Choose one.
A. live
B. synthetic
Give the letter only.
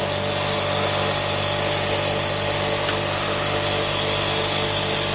A